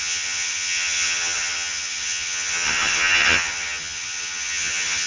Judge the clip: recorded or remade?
remade